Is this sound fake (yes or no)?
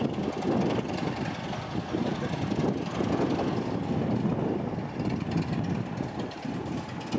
no